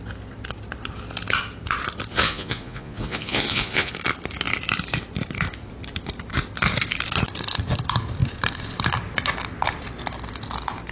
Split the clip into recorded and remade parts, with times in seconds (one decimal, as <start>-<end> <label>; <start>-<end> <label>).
0.0-2.1 recorded; 2.1-3.9 remade; 3.9-10.9 recorded